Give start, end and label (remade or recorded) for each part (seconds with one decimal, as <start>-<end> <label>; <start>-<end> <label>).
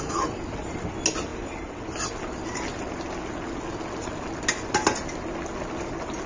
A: 0.0-6.3 recorded